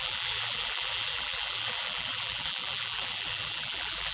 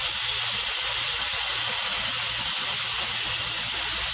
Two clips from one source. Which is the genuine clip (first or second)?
second